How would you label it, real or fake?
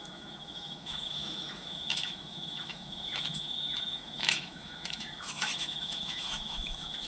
fake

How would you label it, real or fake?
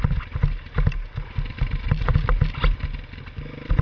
real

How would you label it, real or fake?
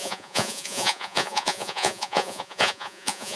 fake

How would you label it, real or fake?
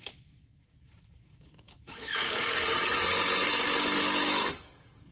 fake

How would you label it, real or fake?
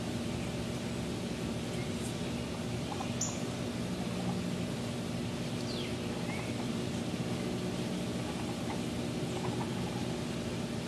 real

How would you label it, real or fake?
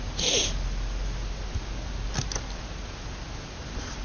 real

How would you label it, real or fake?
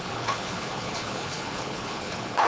fake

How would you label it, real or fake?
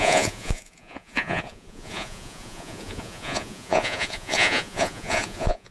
fake